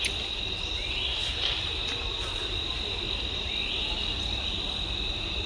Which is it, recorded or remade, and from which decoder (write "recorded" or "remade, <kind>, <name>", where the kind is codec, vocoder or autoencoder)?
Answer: recorded